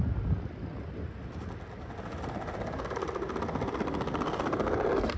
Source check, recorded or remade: recorded